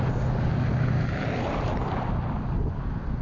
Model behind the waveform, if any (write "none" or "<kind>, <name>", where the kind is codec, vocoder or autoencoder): none